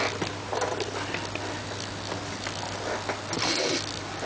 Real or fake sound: real